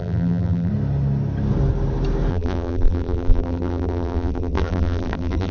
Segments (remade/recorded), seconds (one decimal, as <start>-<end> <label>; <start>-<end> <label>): 0.0-0.7 remade; 0.7-2.3 recorded; 2.3-5.5 remade